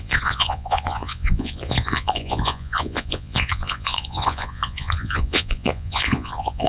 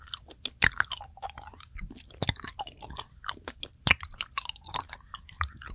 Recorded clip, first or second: second